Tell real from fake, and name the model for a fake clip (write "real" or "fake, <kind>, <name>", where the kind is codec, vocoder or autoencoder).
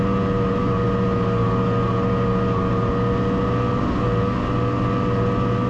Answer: real